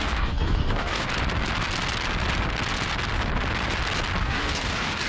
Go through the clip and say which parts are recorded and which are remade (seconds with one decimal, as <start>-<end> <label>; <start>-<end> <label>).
0.0-1.1 remade; 1.1-4.2 recorded; 4.2-5.1 remade